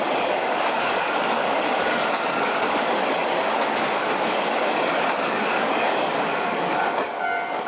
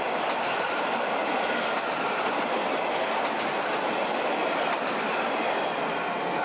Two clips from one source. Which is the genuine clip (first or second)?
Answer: second